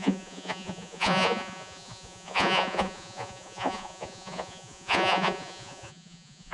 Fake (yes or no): yes